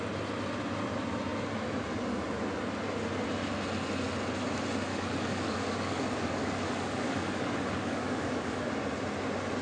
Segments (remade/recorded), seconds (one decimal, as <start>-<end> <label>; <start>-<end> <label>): 0.0-4.9 recorded; 4.9-8.7 remade; 8.7-9.6 recorded